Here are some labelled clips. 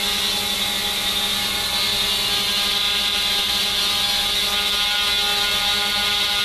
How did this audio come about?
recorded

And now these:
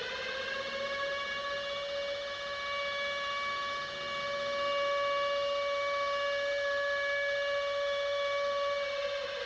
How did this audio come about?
recorded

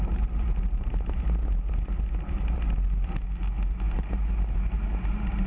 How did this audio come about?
recorded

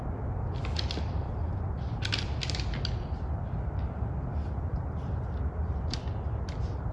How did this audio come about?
recorded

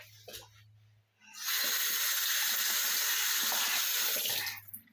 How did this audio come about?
recorded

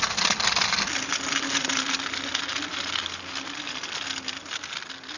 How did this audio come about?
recorded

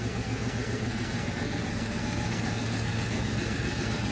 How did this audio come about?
remade